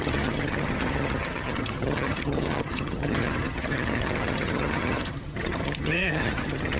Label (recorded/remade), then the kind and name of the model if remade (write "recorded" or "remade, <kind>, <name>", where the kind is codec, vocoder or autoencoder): remade, vocoder, HiFi-GAN